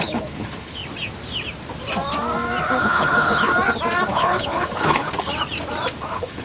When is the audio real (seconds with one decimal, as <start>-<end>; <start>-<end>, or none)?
0.8-2.8; 3.5-4.1; 5.3-6.0